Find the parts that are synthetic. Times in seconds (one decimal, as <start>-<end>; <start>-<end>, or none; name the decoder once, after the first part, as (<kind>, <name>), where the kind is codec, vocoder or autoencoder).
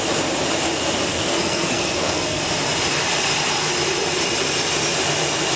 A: 1.1-2.4 (codec, SNAC)